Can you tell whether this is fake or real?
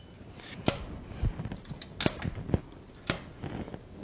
real